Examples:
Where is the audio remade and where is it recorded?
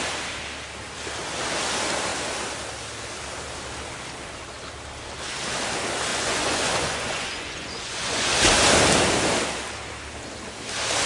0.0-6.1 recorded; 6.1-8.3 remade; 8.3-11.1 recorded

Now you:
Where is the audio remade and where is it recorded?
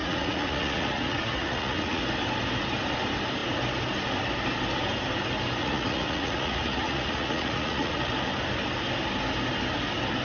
0.0-2.0 remade; 2.0-5.6 recorded; 5.6-8.1 remade; 8.1-10.2 recorded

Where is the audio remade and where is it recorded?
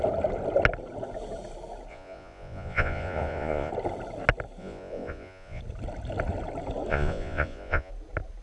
0.0-1.9 recorded; 1.9-3.7 remade; 3.7-4.6 recorded; 4.6-5.6 remade; 5.6-6.9 recorded; 6.9-7.9 remade; 7.9-8.4 recorded